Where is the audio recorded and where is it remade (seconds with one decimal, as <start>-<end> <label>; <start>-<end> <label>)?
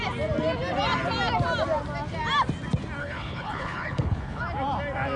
0.0-3.0 recorded; 3.0-4.4 remade; 4.4-5.2 recorded